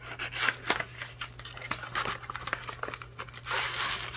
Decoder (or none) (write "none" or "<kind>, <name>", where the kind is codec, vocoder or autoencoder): none